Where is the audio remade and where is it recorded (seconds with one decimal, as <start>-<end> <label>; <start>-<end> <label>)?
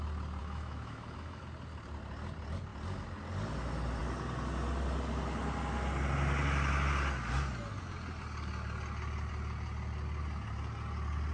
0.0-0.4 recorded; 0.4-1.4 remade; 1.4-11.3 recorded